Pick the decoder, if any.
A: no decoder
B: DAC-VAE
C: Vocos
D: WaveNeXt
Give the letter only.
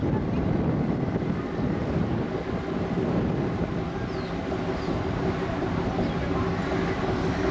A